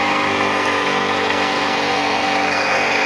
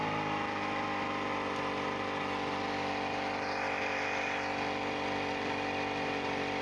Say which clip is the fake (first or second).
first